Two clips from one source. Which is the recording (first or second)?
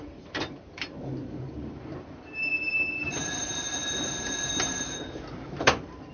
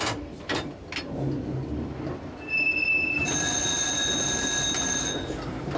second